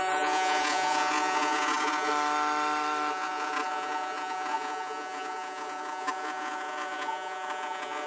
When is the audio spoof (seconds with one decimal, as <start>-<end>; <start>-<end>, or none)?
0.0-2.1; 3.1-8.1